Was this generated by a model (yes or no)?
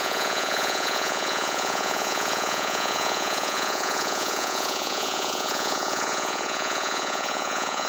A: yes